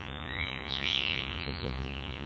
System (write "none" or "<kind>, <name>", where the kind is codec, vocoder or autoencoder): vocoder, Vocos